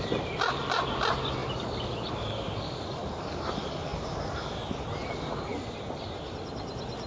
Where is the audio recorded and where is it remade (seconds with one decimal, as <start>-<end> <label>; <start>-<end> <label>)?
0.0-1.4 recorded; 1.4-3.5 remade; 3.5-7.1 recorded